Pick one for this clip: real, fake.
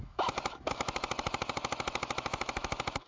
fake